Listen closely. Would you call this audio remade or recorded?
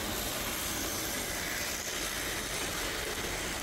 recorded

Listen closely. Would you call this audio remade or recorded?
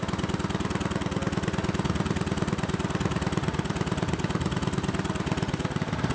recorded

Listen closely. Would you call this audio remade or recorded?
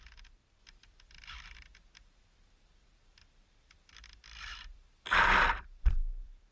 remade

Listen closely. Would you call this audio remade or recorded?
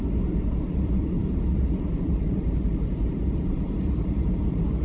remade